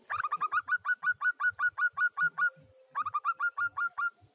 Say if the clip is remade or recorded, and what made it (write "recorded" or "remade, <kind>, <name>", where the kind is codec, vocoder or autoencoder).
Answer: recorded